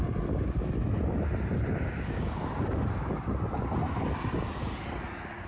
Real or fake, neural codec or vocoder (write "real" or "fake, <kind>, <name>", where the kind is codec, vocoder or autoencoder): real